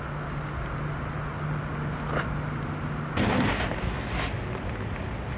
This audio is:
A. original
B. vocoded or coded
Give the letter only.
A